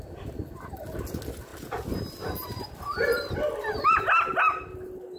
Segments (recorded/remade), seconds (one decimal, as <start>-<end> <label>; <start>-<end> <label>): 0.0-5.2 recorded